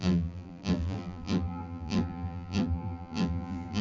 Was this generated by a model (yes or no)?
yes